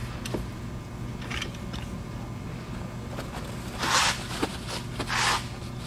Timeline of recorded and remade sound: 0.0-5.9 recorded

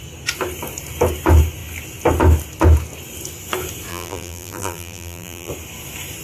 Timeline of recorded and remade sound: 0.0-3.9 recorded; 3.9-5.5 remade; 5.5-6.2 recorded

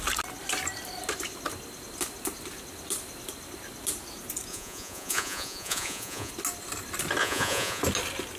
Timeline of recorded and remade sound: 0.0-4.5 recorded; 4.5-6.3 remade; 6.3-7.2 recorded; 7.2-7.8 remade; 7.8-8.4 recorded

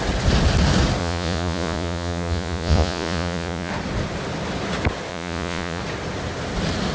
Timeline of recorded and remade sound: 0.0-1.0 recorded; 1.0-3.7 remade; 3.7-5.1 recorded; 5.1-5.8 remade; 5.8-6.9 recorded

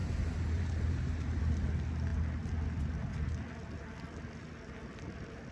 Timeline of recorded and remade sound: 0.0-1.4 remade; 1.4-5.5 recorded

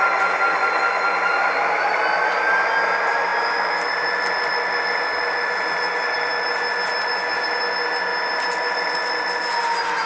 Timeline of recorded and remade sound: 0.0-1.3 recorded; 1.3-2.0 remade; 2.0-10.1 recorded

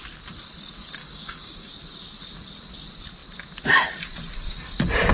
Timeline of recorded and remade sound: 0.0-1.0 recorded; 1.0-1.7 remade; 1.7-5.1 recorded

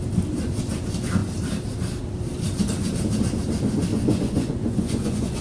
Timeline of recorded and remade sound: 0.0-3.9 recorded; 3.9-5.4 remade